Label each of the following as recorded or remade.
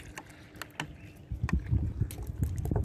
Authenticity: recorded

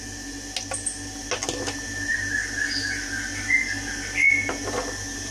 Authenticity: recorded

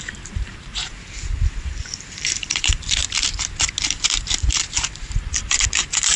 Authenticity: remade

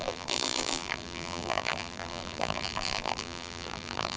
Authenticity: remade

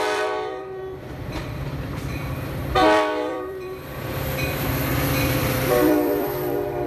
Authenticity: remade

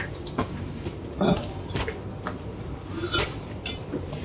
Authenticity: remade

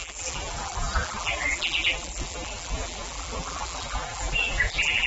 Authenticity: remade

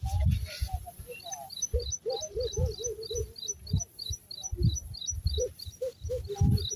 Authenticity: recorded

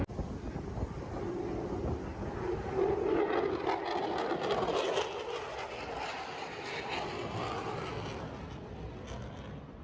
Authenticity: recorded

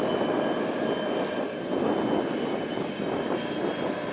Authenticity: recorded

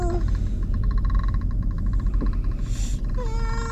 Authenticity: recorded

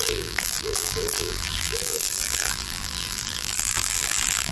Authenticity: remade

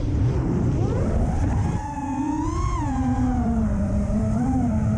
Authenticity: remade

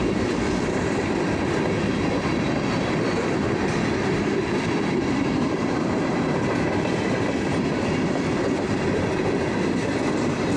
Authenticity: remade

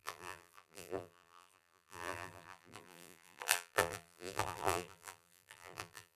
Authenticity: remade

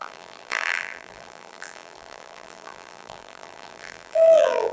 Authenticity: remade